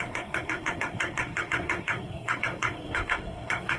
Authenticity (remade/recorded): remade